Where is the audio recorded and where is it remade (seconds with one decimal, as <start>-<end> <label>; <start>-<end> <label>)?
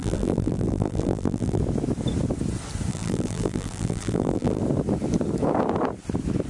0.0-1.6 remade; 1.6-2.9 recorded; 2.9-4.6 remade; 4.6-6.5 recorded